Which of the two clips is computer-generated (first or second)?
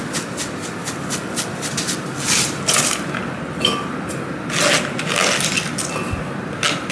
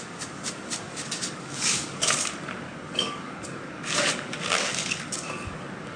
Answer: second